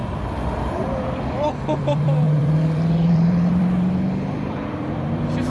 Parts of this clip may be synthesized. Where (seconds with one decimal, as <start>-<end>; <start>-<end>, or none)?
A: 0.0-5.5